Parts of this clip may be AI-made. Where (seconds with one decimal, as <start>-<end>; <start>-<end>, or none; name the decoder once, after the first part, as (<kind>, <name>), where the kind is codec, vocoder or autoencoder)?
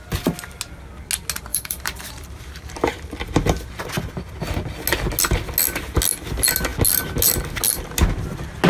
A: 1.5-2.8 (vocoder, BigVGAN v2)